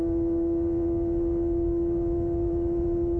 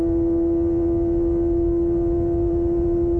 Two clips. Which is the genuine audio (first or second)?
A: second